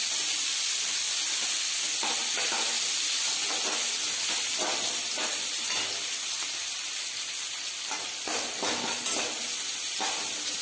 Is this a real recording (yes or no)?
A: yes